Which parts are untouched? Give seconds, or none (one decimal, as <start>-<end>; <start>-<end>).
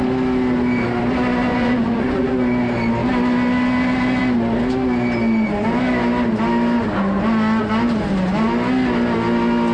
0.0-1.5; 2.3-9.7